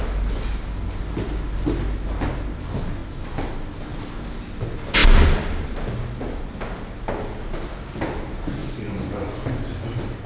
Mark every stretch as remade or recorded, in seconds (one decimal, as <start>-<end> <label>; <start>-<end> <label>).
0.0-3.0 recorded; 3.0-3.5 remade; 3.5-10.3 recorded